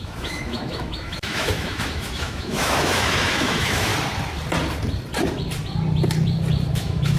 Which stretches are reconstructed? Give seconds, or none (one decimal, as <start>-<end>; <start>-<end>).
0.0-3.9; 6.7-7.2